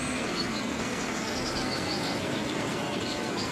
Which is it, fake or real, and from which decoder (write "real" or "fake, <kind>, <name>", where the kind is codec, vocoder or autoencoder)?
fake, codec, SNAC